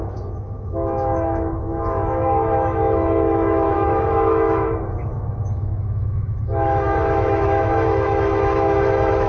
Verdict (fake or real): fake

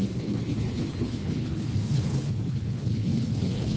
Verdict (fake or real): fake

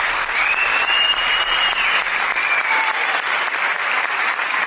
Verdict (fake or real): real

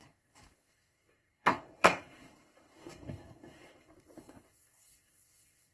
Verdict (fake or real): fake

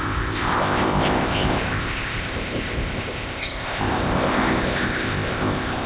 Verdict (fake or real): fake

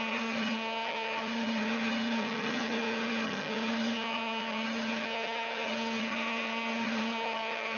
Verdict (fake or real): fake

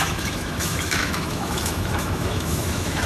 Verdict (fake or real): fake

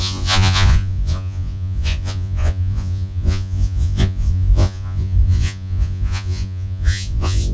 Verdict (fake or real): fake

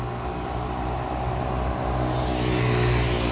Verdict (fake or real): real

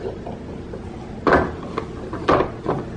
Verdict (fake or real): real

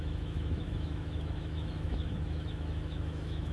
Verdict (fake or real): fake